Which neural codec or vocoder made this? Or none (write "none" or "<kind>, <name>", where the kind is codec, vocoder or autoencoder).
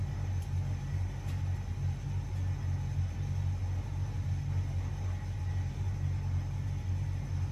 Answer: none